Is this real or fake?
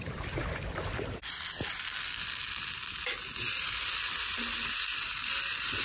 fake